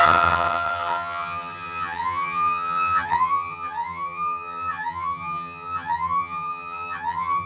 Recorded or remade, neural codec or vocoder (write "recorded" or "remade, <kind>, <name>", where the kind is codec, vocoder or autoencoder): remade, vocoder, HiFi-GAN